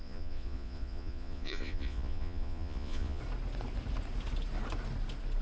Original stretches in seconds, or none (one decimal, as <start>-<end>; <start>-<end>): 3.2-5.4